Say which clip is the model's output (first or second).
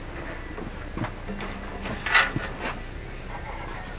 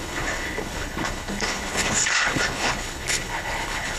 second